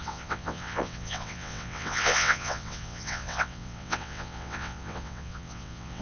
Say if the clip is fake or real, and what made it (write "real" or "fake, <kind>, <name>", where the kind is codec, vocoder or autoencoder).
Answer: fake, vocoder, WaveNeXt